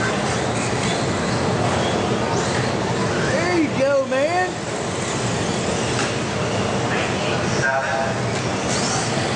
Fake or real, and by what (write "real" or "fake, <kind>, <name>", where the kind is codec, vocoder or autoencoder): real